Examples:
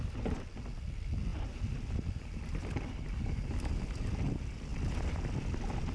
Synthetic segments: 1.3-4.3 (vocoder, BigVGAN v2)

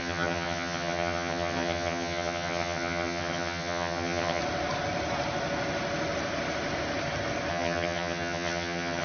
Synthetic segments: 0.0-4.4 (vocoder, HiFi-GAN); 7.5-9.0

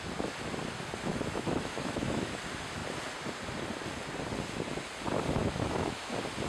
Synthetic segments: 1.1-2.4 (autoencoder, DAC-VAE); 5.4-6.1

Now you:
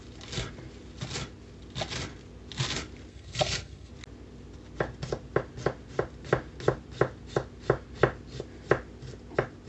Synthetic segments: 3.1-3.9 (codec, SNAC)

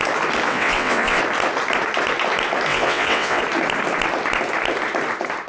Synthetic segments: 0.5-1.2 (vocoder, WaveNeXt); 2.7-3.4

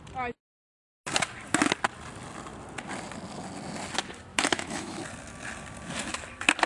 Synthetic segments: 4.3-5.0 (autoencoder, DAC-VAE)

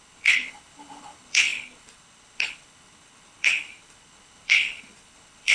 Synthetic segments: 0.0-5.5 (codec, HILCodec)

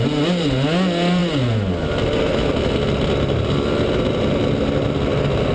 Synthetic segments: none